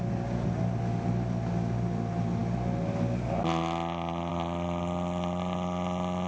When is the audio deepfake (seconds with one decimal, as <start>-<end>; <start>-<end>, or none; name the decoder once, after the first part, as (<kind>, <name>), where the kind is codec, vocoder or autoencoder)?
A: none

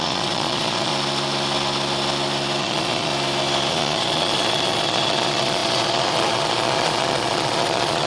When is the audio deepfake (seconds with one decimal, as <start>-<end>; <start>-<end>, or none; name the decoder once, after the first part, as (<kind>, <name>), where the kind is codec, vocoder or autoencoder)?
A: 0.0-0.9 (vocoder, Vocos); 2.6-3.1; 3.7-8.1

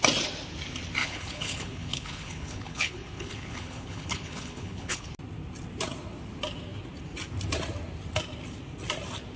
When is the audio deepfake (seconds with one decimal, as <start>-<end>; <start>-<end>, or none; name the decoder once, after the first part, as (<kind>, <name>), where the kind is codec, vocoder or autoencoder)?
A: 1.0-5.1 (codec, HILCodec)

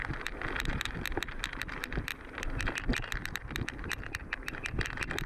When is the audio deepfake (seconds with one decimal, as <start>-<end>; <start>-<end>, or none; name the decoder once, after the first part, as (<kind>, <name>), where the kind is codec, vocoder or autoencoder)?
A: none

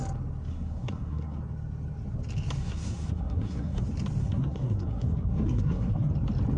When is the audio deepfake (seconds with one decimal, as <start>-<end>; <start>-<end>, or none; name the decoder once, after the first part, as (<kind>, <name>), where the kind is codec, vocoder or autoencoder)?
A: 0.5-1.4 (codec, SNAC); 2.6-3.8; 4.2-6.1

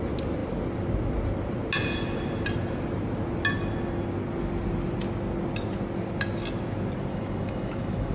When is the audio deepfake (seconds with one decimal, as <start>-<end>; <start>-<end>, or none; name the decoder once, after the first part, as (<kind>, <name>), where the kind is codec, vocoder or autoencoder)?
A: 7.1-8.1 (autoencoder, DAC-VAE)

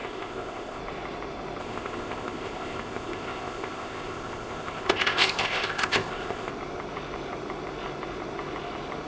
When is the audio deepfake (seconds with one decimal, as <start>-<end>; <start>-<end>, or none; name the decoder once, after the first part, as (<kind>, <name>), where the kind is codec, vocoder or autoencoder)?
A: 0.0-0.8 (codec, ZipCodec); 1.6-6.5

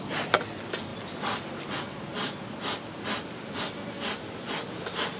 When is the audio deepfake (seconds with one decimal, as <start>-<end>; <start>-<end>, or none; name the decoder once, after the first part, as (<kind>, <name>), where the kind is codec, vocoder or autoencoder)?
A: none